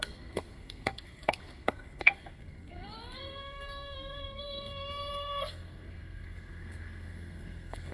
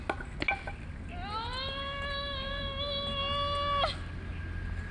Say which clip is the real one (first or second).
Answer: second